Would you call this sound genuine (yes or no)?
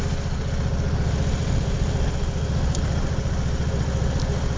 yes